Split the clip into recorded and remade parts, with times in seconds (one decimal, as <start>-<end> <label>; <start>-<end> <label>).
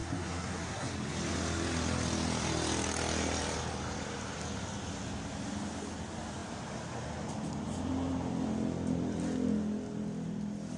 0.0-0.9 remade; 0.9-10.8 recorded